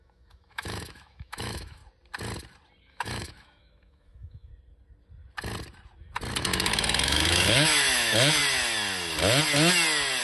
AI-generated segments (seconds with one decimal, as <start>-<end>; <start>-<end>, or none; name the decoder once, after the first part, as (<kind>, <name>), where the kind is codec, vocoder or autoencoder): 0.0-1.8 (autoencoder, DAC-VAE); 2.8-4.5; 6.4-8.4